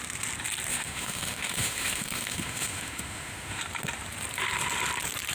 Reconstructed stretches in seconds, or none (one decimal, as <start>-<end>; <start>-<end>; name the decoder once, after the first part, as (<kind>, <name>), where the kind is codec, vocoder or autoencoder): 0.7-3.6 (autoencoder, DAC-VAE)